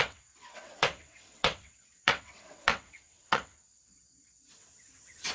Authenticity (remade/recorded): remade